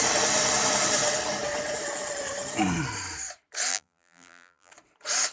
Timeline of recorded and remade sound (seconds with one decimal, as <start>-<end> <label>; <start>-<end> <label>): 0.0-3.7 recorded; 3.7-4.7 remade; 4.7-5.3 recorded